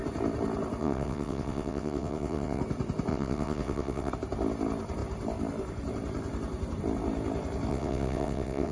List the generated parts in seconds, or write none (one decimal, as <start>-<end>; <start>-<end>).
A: 0.8-2.6; 3.1-4.1; 7.7-8.7

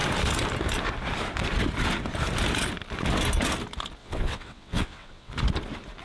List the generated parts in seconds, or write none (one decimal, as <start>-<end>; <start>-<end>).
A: 4.0-5.3

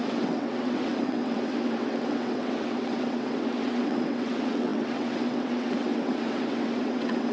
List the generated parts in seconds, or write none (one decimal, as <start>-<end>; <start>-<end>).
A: 0.0-7.3

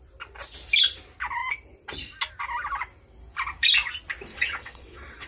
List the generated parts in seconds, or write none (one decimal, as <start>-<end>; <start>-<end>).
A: 4.3-5.3

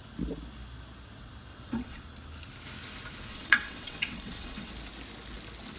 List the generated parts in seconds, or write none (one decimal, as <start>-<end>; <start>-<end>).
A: 1.5-2.0; 3.3-4.7

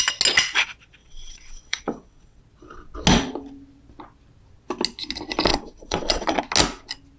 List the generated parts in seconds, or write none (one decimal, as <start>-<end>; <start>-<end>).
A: 1.0-2.4; 5.5-6.4